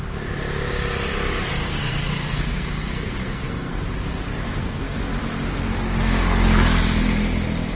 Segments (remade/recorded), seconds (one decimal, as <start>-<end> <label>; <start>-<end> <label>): 0.0-1.6 recorded; 1.6-3.8 remade; 3.8-4.3 recorded; 4.3-5.0 remade; 5.0-7.7 recorded